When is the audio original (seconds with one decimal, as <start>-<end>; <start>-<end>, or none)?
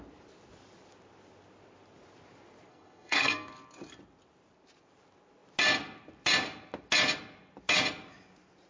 0.0-2.7; 3.5-8.7